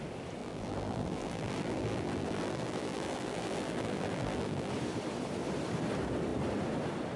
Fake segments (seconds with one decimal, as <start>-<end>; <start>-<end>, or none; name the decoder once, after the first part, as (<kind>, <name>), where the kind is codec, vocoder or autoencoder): 0.4-4.7 (vocoder, BigVGAN v2)